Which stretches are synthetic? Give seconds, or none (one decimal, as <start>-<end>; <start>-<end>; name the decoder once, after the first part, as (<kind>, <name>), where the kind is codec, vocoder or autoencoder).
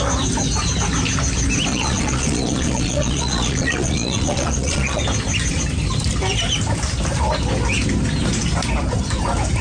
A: 1.7-5.0 (vocoder, Vocos)